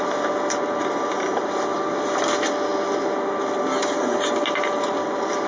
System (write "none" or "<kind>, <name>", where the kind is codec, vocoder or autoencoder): none